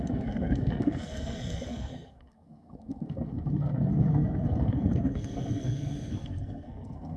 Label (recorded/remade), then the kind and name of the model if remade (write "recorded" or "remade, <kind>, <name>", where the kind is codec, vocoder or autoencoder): remade, codec, SNAC